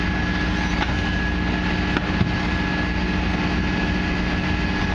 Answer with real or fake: real